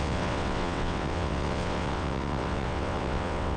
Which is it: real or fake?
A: fake